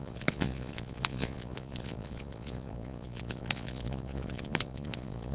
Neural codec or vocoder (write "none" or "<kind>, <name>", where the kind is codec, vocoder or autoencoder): vocoder, Vocos